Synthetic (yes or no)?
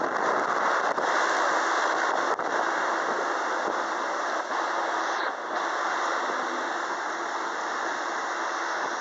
no